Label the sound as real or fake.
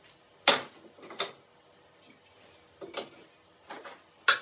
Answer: real